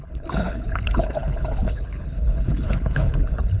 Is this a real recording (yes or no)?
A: no